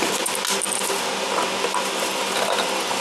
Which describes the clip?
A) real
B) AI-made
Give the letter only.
A